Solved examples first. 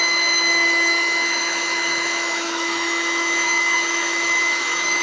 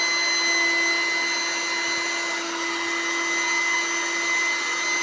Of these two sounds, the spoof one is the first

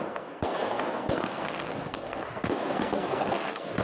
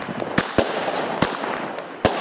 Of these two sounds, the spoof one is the first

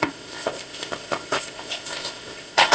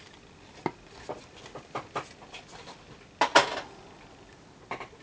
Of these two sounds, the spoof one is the first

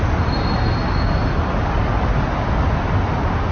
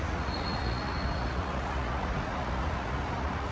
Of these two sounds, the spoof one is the second